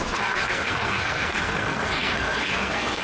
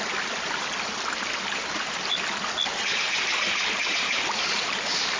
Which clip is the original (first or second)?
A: second